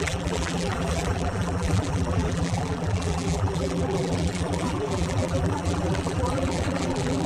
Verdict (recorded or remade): remade